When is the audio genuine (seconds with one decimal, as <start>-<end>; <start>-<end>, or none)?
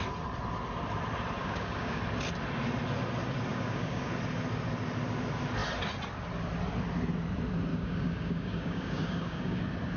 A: 0.0-1.4; 2.0-3.5; 4.1-7.7; 9.6-10.0